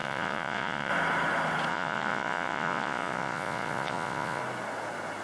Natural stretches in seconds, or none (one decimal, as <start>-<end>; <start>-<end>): 0.9-1.7; 4.4-5.2

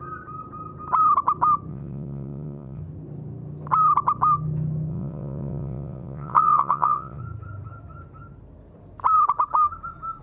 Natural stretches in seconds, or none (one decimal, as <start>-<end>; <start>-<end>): 0.0-1.7; 2.8-4.9; 7.2-10.2

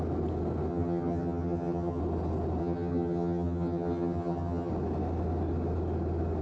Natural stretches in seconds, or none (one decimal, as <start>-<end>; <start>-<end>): 0.0-0.7; 2.0-2.6; 4.7-6.4

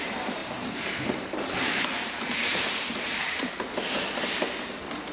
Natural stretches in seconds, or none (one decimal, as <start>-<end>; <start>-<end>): 0.0-0.4; 3.5-5.1

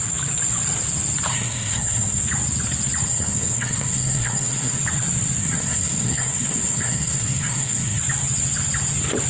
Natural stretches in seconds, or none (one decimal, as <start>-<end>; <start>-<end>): 0.0-1.3; 2.2-3.1; 4.8-5.4; 8.0-9.3

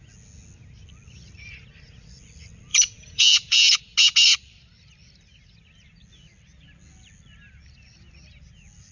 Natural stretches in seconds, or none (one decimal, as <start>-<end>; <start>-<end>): 0.0-2.7; 3.8-8.9

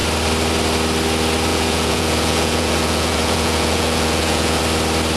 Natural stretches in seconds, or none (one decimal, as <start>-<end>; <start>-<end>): 0.0-1.5; 4.6-5.2